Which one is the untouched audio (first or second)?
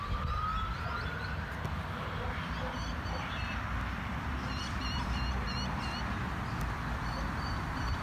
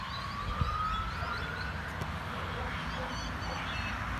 second